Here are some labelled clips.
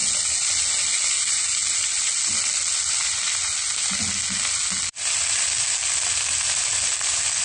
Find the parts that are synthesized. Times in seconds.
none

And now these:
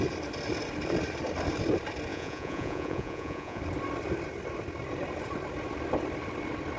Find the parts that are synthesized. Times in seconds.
2.1-3.6 (vocoder, Vocos)